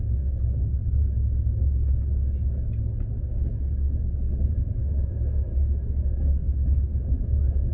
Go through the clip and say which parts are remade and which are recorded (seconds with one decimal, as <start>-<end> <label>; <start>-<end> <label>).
0.0-1.0 remade; 1.0-3.3 recorded; 3.3-7.7 remade